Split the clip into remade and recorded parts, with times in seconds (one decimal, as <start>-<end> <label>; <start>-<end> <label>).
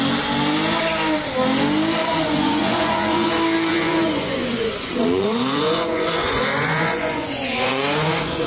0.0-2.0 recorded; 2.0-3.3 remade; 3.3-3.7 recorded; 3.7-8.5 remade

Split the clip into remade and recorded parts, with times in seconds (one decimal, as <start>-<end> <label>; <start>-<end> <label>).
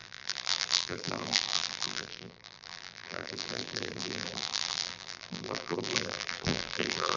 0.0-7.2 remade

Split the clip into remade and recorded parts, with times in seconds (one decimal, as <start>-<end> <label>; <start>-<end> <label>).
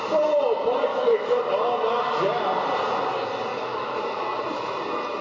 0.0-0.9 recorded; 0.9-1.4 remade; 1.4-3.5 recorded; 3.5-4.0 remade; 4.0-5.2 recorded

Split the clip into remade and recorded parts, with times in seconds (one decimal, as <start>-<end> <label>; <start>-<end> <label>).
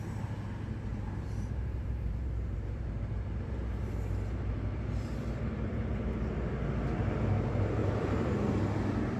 0.0-0.9 recorded; 0.9-6.1 remade; 6.1-7.8 recorded; 7.8-8.3 remade; 8.3-9.2 recorded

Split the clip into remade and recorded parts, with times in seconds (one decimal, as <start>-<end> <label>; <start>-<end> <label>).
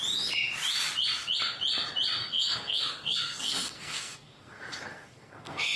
0.0-2.2 recorded; 2.2-5.8 remade